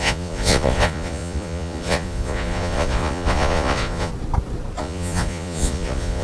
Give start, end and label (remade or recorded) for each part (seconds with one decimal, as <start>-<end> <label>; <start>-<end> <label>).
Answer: 0.0-4.1 remade; 4.1-4.8 recorded; 4.8-6.2 remade